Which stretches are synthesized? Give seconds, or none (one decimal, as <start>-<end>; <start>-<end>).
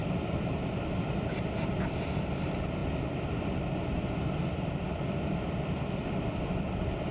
0.0-7.1